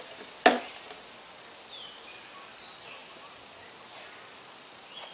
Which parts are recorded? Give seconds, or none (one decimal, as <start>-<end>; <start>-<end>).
0.0-5.1